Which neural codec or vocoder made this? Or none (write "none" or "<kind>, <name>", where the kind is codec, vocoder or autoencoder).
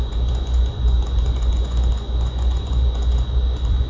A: vocoder, Vocos